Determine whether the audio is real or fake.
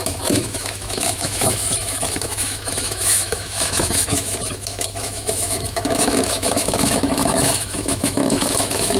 fake